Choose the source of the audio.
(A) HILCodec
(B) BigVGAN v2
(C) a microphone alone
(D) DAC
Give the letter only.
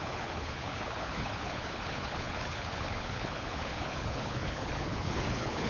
A